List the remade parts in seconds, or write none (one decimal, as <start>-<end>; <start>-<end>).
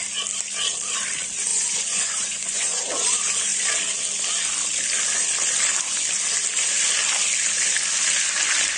1.5-2.8